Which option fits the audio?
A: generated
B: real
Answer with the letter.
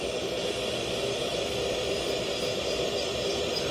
B